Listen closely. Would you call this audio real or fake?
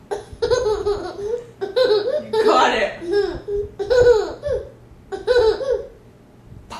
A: real